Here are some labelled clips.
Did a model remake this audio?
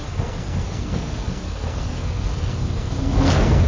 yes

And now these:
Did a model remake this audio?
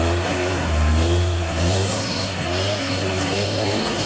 yes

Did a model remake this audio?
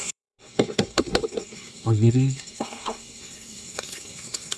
yes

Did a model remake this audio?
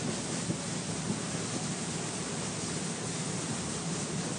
no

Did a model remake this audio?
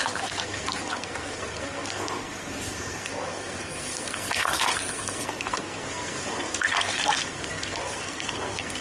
yes